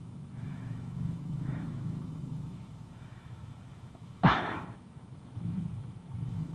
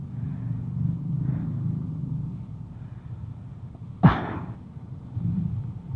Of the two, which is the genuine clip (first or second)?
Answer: second